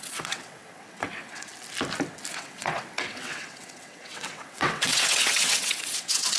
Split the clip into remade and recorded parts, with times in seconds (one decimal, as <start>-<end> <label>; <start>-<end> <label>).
0.0-1.5 remade; 1.5-2.3 recorded; 2.3-6.4 remade